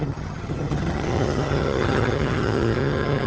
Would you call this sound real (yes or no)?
no